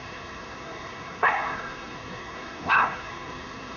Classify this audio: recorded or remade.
remade